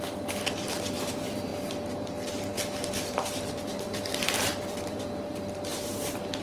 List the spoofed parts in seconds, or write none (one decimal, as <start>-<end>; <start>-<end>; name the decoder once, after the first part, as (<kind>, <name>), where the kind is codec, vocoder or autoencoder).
0.0-1.5 (vocoder, BigVGAN v2); 2.9-6.4